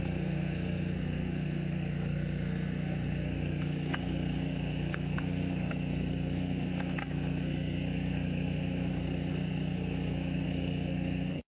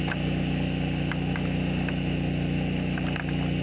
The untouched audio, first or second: second